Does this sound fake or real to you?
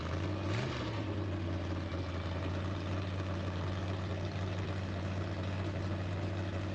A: real